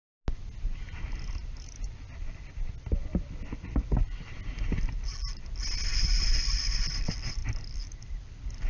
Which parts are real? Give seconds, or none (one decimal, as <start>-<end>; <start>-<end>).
0.0-7.4; 8.2-8.7